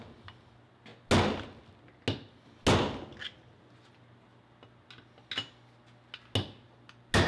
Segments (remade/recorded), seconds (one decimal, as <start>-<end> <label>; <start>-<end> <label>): 0.0-7.3 recorded